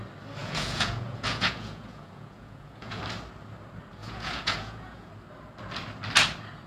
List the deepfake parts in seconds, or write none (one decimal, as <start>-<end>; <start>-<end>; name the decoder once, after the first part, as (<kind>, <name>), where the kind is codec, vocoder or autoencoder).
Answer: 0.4-3.0 (vocoder, Vocos); 4.0-5.1